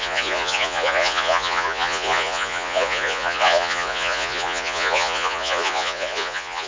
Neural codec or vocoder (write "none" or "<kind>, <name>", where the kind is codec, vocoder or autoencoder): vocoder, Vocos